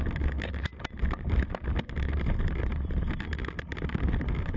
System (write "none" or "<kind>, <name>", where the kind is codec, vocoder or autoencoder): none